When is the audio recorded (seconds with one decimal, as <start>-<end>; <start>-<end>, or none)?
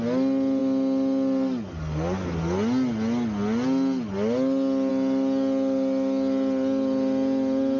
0.0-7.8